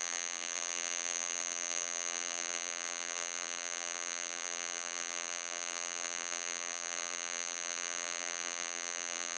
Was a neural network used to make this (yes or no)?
yes